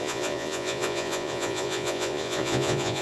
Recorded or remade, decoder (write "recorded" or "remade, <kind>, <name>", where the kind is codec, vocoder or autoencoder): remade, vocoder, Vocos